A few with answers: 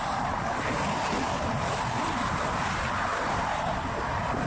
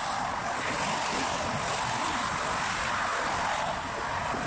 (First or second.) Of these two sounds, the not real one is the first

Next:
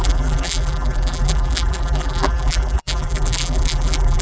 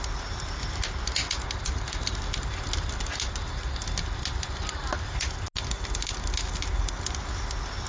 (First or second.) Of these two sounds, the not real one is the first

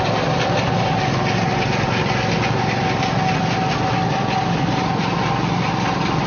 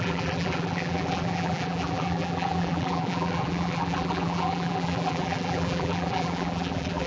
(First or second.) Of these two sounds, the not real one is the second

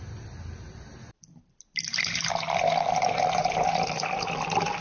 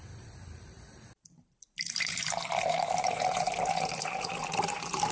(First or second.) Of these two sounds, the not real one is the second